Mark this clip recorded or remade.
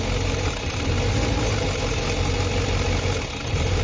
recorded